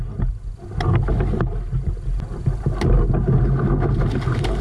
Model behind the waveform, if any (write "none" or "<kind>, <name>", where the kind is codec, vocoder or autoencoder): none